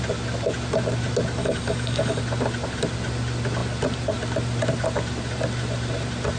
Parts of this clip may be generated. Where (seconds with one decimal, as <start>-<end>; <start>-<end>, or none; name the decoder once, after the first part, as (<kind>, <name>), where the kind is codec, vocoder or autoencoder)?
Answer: 1.4-2.2 (codec, DAC)